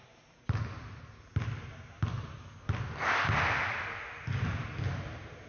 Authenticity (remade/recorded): recorded